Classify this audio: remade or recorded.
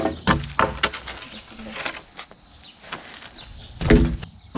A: recorded